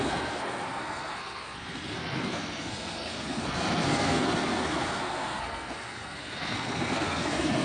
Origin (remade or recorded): remade